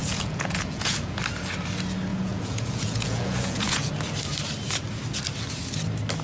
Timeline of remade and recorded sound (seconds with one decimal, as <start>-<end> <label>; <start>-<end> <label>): 0.0-1.2 remade; 1.2-2.1 recorded; 2.1-3.9 remade; 3.9-6.2 recorded